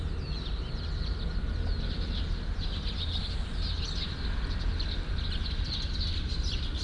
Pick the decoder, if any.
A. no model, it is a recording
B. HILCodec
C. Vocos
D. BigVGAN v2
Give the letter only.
A